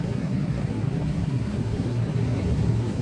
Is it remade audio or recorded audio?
remade